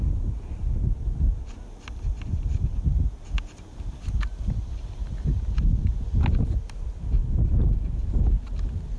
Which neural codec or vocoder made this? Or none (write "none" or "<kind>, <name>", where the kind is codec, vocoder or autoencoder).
none